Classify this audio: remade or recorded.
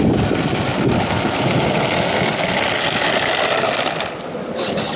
recorded